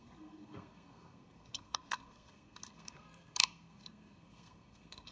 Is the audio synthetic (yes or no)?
yes